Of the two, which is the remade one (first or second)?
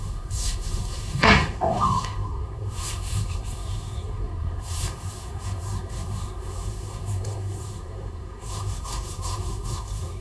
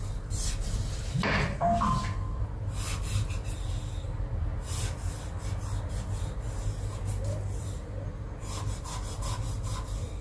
first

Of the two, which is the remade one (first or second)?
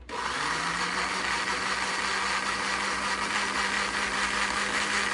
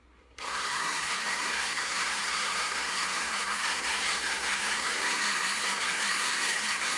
second